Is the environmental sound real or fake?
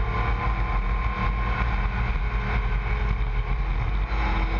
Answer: real